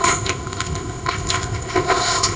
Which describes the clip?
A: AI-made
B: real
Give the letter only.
A